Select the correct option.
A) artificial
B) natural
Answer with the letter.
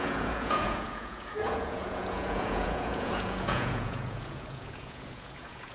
A